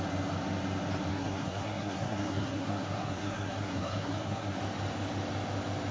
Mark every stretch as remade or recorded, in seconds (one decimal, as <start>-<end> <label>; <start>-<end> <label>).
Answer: 0.0-1.1 recorded; 1.1-4.6 remade; 4.6-5.9 recorded